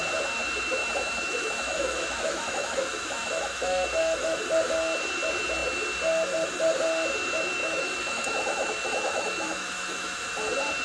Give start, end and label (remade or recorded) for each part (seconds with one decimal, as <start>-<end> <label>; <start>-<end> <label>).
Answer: 0.0-0.8 recorded; 0.8-4.4 remade; 4.4-7.6 recorded; 7.6-10.3 remade; 10.3-10.8 recorded